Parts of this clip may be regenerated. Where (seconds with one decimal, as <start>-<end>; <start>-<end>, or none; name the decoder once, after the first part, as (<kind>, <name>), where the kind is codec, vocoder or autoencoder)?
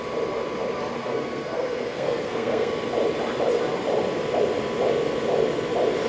1.0-2.7 (codec, SNAC)